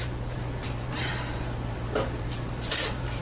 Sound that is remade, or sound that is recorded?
remade